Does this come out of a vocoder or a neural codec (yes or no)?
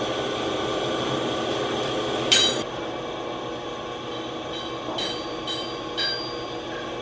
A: no